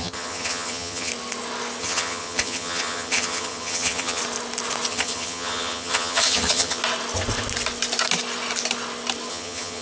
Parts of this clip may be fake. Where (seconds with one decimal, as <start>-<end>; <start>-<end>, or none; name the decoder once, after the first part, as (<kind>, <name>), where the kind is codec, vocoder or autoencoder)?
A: 0.0-1.1 (vocoder, HiFi-GAN); 1.8-4.2; 4.9-6.8; 9.3-9.8